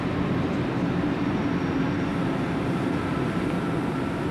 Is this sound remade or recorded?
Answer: recorded